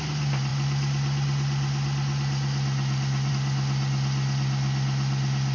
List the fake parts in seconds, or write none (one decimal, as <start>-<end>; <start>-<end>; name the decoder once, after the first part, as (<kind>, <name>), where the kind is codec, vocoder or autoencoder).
none